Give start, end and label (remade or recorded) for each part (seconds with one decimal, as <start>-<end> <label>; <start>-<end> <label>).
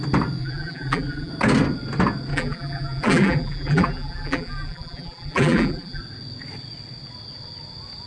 0.0-0.4 recorded; 0.4-1.3 remade; 1.3-2.3 recorded; 2.3-6.0 remade; 6.0-8.1 recorded